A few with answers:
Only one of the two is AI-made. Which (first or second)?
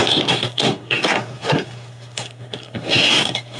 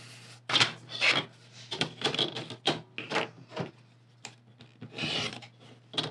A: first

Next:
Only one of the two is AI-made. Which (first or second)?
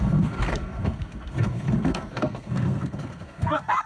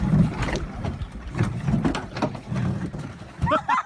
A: first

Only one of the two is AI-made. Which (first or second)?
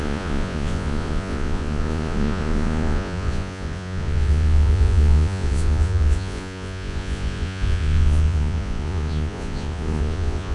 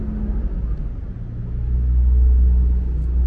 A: first